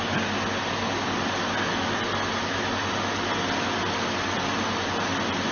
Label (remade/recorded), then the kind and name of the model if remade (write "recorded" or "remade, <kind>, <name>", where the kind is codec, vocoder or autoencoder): recorded